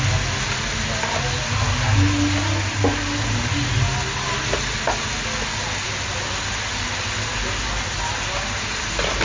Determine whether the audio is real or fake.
real